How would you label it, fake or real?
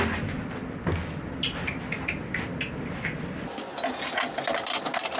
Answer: real